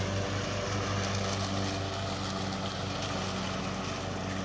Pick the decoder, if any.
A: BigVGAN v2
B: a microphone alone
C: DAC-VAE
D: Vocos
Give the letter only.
B